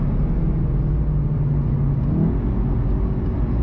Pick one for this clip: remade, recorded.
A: recorded